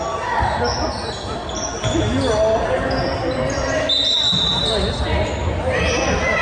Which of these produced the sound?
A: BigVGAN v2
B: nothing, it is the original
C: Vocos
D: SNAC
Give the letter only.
B